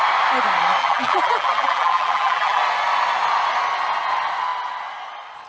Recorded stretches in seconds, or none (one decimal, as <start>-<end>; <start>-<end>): 0.0-0.8; 2.6-5.5